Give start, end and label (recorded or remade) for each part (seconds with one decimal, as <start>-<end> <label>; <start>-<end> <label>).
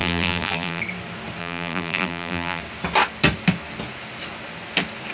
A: 0.0-0.8 remade; 0.8-1.4 recorded; 1.4-2.6 remade; 2.6-5.1 recorded